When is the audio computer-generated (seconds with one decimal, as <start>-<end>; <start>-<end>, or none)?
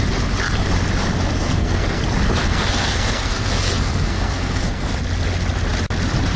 1.4-2.0; 2.4-4.9